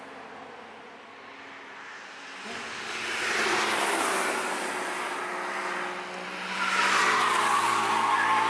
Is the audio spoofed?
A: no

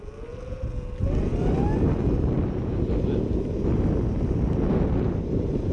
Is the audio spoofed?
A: no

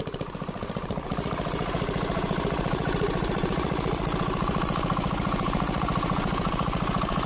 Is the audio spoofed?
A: yes